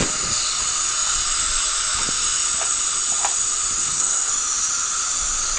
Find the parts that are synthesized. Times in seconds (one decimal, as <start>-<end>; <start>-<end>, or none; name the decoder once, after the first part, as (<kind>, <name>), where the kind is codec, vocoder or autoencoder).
3.8-4.3 (codec, SNAC)